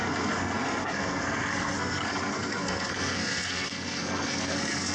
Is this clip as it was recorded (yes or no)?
no